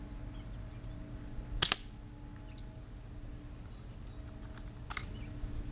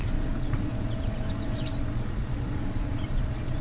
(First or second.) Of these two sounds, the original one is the first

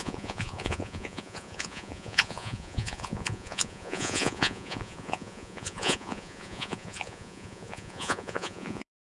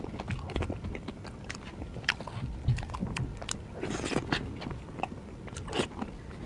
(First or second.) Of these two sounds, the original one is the second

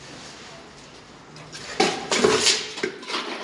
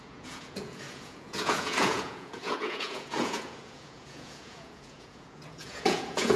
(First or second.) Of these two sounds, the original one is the first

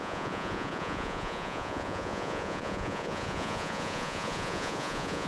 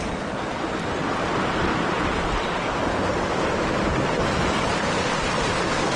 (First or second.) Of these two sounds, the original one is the second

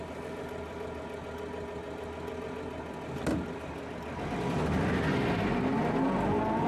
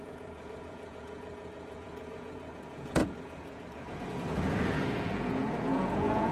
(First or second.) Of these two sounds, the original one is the first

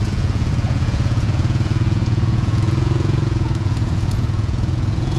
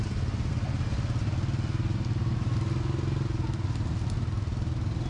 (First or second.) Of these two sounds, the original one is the second